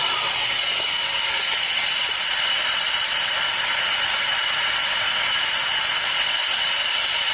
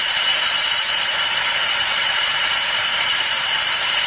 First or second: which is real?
first